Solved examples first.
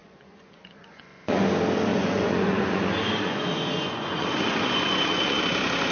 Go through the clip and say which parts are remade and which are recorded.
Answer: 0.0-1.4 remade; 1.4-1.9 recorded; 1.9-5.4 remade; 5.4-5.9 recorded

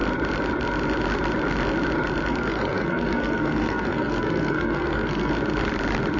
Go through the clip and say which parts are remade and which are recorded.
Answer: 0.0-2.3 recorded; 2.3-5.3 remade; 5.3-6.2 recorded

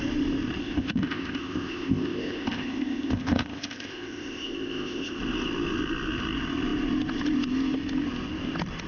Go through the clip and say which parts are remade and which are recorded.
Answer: 0.0-0.6 recorded; 0.6-5.2 remade; 5.2-8.9 recorded